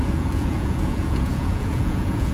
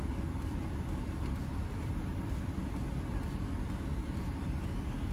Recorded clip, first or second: second